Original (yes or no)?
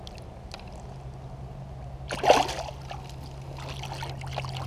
yes